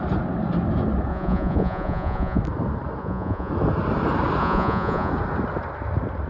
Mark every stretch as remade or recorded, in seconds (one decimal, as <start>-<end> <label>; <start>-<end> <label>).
0.0-1.1 recorded; 1.1-2.4 remade; 2.4-3.0 recorded; 3.0-3.5 remade; 3.5-4.4 recorded; 4.4-5.1 remade; 5.1-6.3 recorded